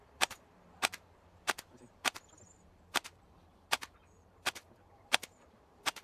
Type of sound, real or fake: fake